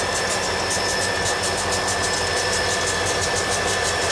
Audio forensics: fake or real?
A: real